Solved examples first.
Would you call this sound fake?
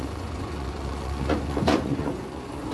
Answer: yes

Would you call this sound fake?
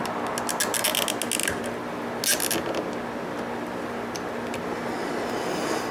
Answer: no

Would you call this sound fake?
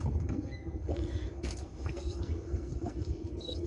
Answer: yes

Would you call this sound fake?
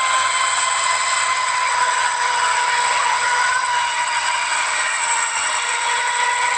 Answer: yes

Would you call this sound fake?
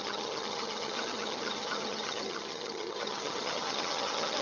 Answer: yes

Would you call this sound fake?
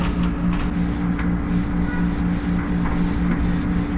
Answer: no